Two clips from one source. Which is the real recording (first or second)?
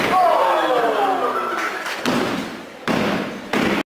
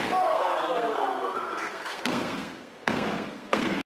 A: first